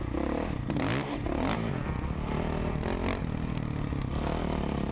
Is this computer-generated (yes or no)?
no